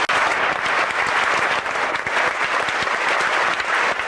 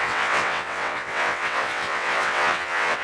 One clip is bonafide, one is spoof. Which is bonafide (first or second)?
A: first